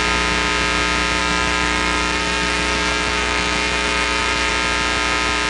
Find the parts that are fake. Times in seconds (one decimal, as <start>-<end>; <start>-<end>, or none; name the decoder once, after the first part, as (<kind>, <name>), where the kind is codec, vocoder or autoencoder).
1.2-4.5 (autoencoder, DAC-VAE)